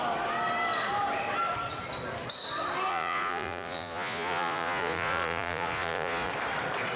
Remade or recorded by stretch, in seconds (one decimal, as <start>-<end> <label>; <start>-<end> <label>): 0.0-2.9 recorded; 2.9-6.3 remade; 6.3-7.0 recorded